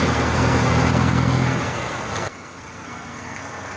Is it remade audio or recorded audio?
remade